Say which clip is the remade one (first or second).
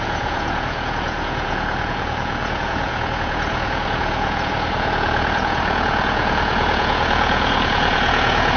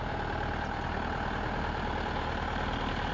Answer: first